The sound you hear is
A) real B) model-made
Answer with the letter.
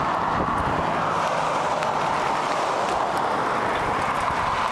A